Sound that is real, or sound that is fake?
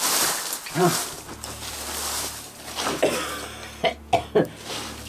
real